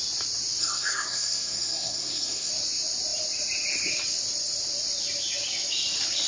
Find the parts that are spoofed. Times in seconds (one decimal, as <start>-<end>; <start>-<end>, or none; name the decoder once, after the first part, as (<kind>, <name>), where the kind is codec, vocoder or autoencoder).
0.6-2.5 (codec, SNAC)